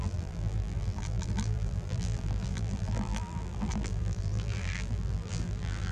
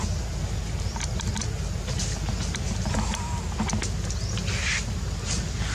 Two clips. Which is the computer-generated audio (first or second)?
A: first